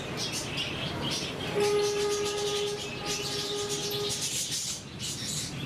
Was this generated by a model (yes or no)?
no